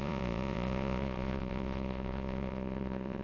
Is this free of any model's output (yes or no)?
no